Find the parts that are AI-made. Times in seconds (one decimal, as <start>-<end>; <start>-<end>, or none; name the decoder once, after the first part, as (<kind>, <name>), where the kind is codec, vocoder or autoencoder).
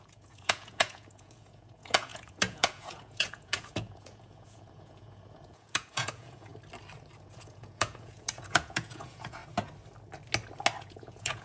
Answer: 0.0-6.5 (vocoder, Vocos); 7.2-9.4; 10.8-11.4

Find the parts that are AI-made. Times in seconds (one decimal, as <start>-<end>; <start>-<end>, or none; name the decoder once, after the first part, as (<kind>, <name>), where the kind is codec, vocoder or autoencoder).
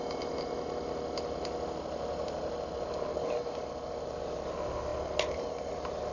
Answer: none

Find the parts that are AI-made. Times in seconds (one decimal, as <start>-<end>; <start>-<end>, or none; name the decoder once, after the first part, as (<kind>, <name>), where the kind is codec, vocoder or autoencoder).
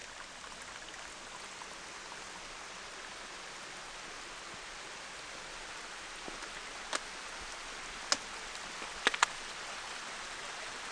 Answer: none